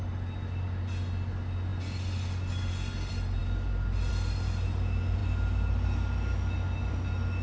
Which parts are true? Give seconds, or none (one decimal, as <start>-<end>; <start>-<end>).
0.0-7.4